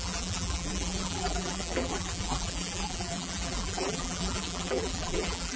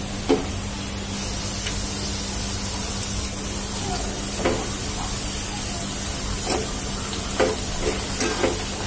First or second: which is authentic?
second